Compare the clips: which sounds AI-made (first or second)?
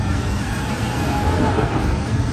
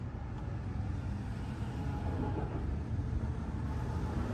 first